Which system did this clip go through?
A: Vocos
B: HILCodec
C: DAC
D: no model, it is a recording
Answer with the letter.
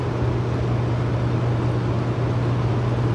D